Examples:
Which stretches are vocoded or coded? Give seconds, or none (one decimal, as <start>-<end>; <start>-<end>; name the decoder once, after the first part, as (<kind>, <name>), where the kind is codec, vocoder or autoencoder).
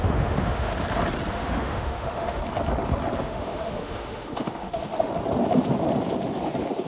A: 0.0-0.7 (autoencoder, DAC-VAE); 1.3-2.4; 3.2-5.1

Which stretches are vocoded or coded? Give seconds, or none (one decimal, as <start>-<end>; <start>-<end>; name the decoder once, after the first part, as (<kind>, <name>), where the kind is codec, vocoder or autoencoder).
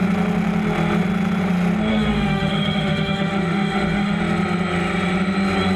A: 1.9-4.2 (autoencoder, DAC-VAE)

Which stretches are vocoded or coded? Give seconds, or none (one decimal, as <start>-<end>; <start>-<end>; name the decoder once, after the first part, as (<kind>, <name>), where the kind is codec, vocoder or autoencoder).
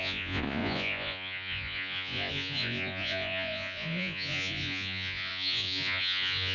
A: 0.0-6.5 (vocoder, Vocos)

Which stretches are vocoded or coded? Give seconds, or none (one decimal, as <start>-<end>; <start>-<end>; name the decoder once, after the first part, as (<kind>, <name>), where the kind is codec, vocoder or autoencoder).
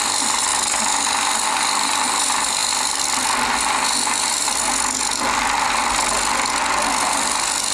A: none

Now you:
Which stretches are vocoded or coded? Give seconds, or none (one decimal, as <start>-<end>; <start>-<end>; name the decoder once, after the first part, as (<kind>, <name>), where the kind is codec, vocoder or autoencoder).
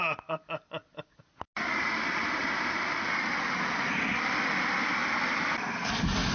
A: none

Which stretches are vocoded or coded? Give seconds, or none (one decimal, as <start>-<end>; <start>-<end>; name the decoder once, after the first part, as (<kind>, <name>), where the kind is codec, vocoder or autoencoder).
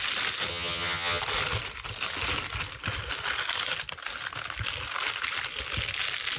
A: 0.5-1.2 (vocoder, HiFi-GAN)